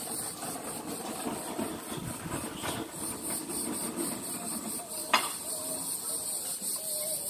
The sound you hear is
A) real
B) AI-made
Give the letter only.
A